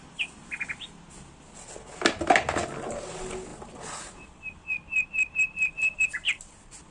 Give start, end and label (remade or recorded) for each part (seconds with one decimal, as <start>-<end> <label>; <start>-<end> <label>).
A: 0.0-6.9 recorded